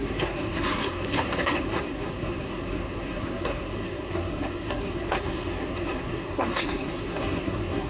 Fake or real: fake